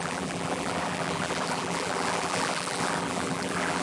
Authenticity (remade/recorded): remade